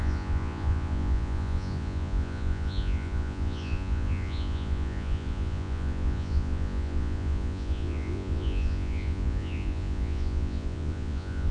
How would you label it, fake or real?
fake